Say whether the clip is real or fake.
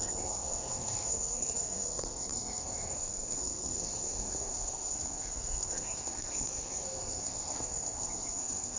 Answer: fake